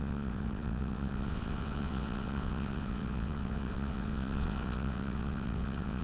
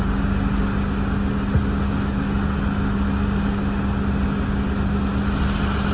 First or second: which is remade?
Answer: first